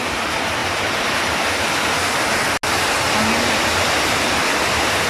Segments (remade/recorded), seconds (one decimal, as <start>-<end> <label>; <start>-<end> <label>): 0.0-5.1 recorded